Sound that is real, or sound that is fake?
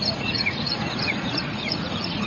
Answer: fake